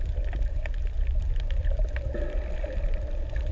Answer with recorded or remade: recorded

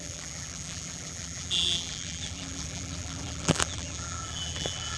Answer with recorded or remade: remade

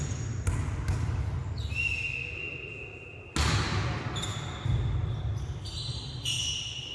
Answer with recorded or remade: recorded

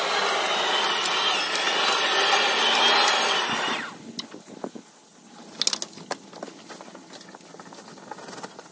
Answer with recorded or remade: recorded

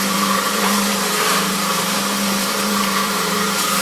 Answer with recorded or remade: remade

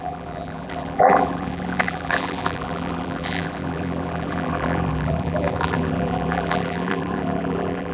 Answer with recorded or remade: remade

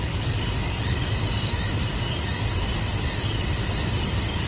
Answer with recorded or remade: remade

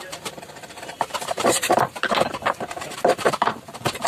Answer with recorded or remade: remade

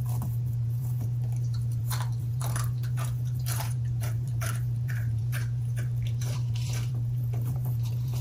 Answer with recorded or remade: remade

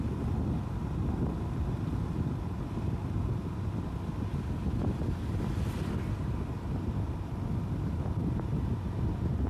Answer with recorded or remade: recorded